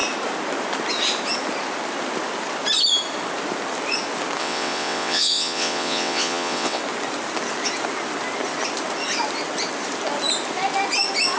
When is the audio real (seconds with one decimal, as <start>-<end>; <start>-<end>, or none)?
0.0-4.4; 6.8-11.4